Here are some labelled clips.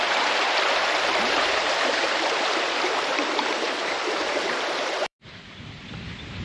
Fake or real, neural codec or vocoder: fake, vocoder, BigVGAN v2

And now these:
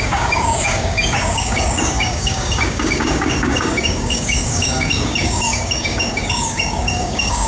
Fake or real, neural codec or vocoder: fake, codec, DAC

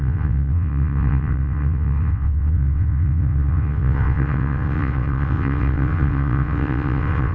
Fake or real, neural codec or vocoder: fake, vocoder, WaveNeXt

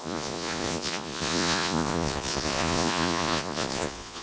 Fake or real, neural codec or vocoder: fake, vocoder, Vocos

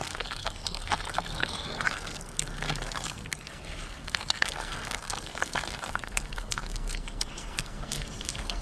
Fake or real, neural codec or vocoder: fake, codec, SNAC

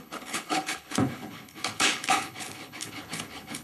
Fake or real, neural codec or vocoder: fake, codec, HILCodec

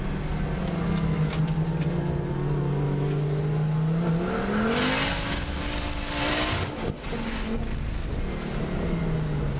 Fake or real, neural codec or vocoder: real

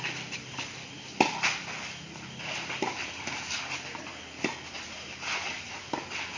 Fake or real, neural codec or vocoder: real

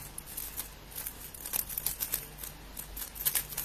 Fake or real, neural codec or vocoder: real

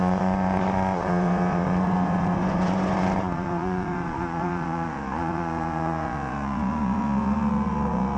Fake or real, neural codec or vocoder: fake, vocoder, Vocos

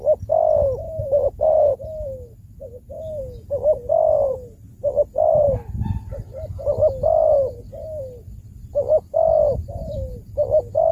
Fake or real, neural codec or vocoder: real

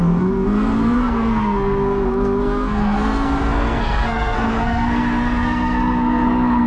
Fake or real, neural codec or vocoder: fake, codec, SNAC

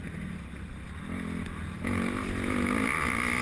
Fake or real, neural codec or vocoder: real